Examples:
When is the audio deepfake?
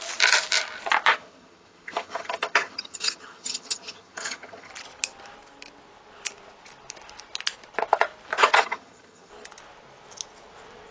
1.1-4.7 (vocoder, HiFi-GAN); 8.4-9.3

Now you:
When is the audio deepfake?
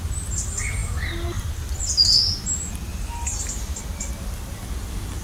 2.9-3.8 (vocoder, BigVGAN v2)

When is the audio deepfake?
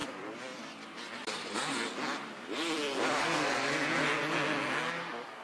none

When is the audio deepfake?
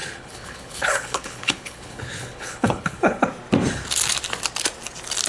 0.0-3.2 (codec, HILCodec)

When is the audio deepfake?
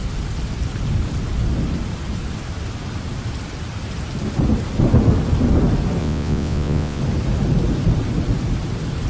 6.0-7.0 (vocoder, Vocos)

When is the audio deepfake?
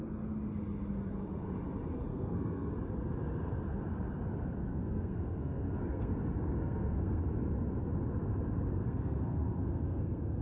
2.1-2.7 (codec, SNAC); 4.7-6.1; 6.6-7.2; 8.7-10.4